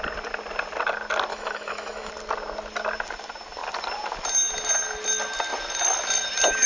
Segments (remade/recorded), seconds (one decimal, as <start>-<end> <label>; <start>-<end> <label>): 0.0-1.3 recorded; 1.3-2.1 remade; 2.1-6.7 recorded